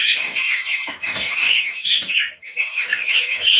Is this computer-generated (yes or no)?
yes